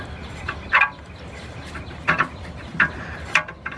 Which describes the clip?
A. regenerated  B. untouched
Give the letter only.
B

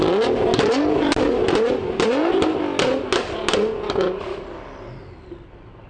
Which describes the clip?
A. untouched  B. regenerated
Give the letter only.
A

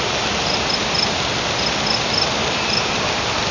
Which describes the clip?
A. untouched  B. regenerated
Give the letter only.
A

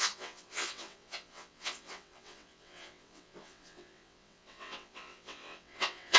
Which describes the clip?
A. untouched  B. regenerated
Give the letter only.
B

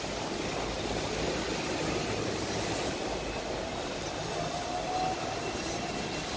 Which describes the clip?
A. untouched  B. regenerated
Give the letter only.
A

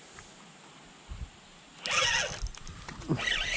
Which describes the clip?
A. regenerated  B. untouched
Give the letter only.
B